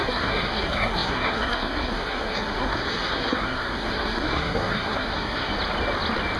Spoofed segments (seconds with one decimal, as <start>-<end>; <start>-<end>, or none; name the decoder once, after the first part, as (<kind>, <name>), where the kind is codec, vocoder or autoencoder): 0.0-5.5 (codec, SNAC)